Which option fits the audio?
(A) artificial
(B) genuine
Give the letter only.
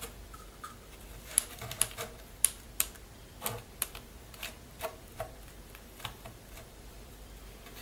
A